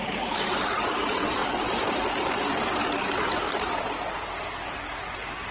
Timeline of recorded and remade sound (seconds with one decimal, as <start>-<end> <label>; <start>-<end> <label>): 0.0-2.5 remade; 2.5-3.3 recorded; 3.3-5.5 remade